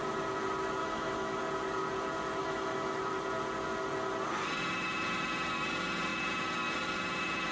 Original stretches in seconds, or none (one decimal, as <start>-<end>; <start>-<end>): 0.0-0.8; 1.4-2.4; 3.0-7.5